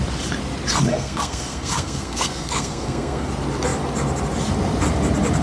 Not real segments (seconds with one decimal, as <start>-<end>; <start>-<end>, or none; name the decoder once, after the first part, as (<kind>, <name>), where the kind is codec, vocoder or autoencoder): 0.9-3.3 (codec, SNAC)